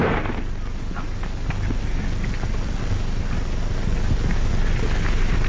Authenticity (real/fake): real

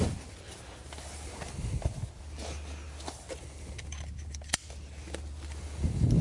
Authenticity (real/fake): real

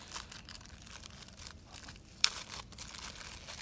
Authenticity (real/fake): fake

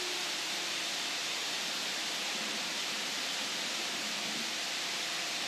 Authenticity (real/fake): fake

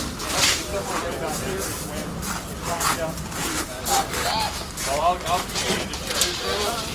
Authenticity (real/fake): fake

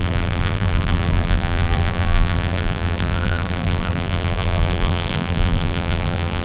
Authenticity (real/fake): fake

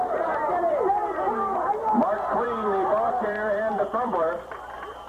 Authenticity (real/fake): fake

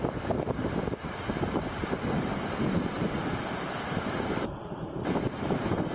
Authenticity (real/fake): fake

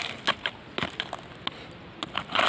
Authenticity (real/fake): real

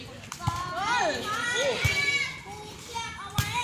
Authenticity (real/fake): real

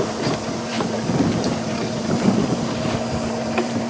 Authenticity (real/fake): fake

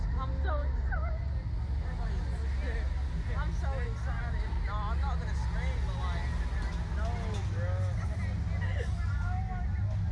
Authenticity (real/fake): real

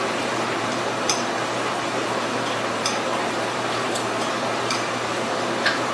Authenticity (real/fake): fake